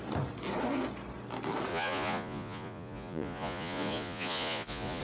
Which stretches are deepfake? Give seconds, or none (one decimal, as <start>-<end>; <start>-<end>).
1.7-5.0